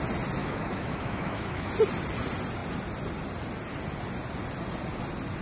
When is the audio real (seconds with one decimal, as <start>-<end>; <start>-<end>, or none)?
0.0-0.4; 1.7-5.4

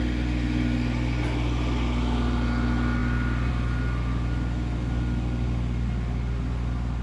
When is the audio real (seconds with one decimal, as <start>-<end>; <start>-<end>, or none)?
0.0-7.0

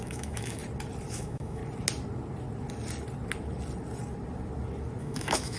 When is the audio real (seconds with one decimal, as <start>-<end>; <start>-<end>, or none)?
0.6-1.1; 1.6-5.0

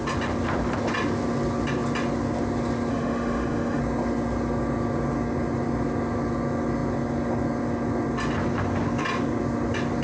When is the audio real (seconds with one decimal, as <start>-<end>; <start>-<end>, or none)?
0.0-2.9; 3.8-10.0

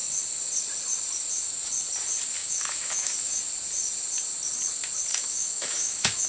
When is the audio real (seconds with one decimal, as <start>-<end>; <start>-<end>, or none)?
0.0-2.4; 3.4-5.1

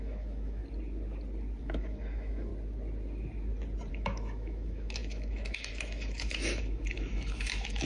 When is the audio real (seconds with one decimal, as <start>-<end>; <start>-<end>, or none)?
0.6-1.6; 2.5-3.9

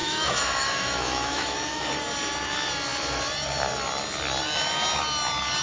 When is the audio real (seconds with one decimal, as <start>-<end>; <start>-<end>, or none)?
1.9-5.6

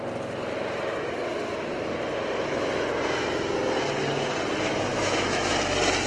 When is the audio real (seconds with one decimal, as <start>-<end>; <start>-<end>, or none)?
0.0-4.9; 5.5-6.1